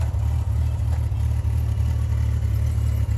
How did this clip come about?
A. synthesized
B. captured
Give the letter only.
B